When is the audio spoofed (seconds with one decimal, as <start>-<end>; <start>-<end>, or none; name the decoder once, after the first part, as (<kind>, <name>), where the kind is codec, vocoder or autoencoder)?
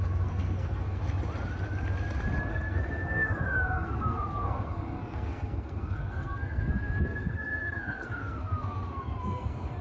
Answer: 0.0-1.0 (codec, SNAC); 2.5-9.8